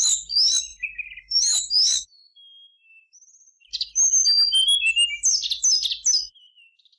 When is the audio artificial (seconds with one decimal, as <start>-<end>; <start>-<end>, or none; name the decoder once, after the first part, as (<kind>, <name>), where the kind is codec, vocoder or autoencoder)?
0.7-1.7 (vocoder, BigVGAN v2)